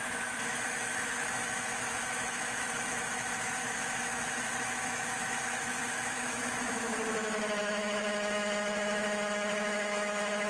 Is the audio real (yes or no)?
no